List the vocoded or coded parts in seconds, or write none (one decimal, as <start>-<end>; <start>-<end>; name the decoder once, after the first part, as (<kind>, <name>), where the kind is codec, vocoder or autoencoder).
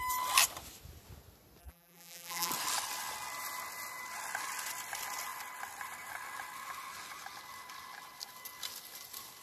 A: 1.6-2.5 (vocoder, BigVGAN v2)